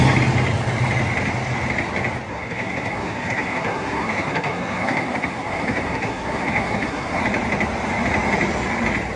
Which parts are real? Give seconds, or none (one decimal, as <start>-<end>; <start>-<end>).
0.0-2.3; 7.2-9.2